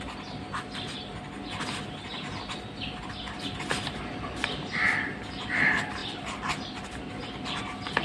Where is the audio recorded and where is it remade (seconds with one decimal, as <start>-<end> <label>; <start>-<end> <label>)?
0.0-2.1 remade; 2.1-3.9 recorded; 3.9-8.0 remade